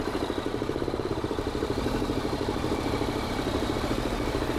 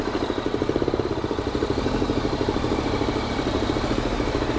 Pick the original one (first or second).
second